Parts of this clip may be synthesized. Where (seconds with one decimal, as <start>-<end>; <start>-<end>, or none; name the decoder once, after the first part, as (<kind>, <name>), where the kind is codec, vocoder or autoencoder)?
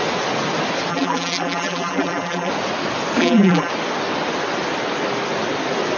0.9-2.5 (vocoder, BigVGAN v2); 3.2-3.7